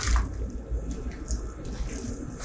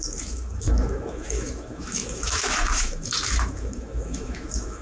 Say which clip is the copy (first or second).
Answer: second